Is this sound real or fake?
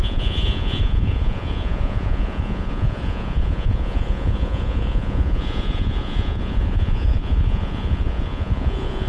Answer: fake